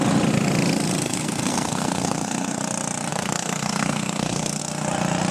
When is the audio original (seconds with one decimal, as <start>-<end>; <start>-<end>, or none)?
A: 0.0-1.0; 2.6-3.1; 4.6-5.3